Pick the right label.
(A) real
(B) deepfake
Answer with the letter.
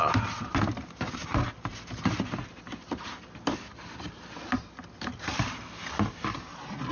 A